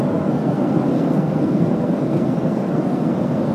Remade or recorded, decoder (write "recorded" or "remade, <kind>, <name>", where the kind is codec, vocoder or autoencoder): remade, codec, SNAC